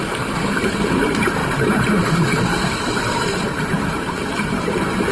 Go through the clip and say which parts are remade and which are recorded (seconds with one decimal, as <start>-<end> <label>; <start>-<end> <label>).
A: 0.0-5.1 remade

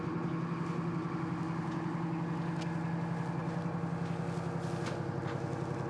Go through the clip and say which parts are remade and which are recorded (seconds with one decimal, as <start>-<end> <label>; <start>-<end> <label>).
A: 0.0-5.9 recorded